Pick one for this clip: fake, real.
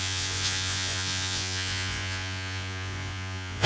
fake